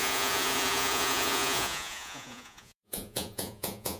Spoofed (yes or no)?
yes